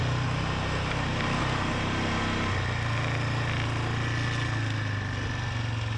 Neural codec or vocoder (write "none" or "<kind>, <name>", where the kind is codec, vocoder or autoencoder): none